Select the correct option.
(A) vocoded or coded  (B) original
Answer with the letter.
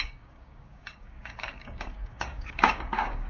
A